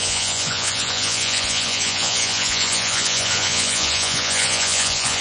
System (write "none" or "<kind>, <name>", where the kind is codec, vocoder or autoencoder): vocoder, Vocos